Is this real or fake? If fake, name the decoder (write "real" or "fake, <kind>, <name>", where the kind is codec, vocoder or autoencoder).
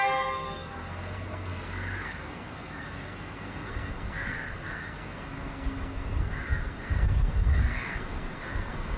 fake, codec, SNAC